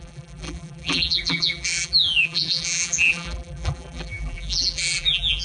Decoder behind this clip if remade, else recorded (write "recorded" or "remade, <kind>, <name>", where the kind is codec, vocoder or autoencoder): remade, vocoder, BigVGAN v2